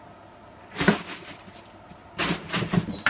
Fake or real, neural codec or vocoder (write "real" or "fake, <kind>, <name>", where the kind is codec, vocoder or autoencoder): real